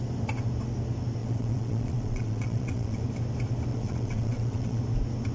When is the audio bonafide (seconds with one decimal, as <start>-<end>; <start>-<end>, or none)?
0.0-1.2; 3.0-3.7; 4.8-5.3